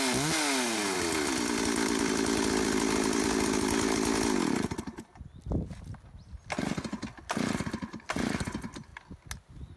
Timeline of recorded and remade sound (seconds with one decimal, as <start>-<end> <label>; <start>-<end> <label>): 0.0-9.8 recorded